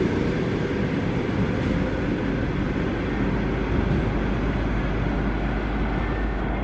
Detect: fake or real real